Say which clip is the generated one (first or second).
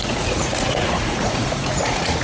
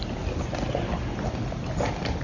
first